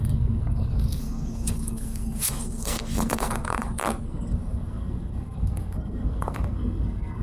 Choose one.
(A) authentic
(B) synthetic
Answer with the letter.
B